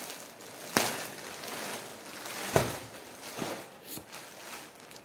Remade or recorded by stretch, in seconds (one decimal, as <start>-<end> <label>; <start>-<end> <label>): 0.0-5.0 recorded